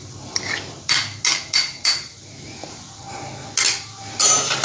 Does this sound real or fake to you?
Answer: real